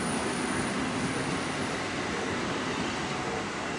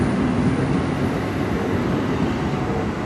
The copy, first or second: first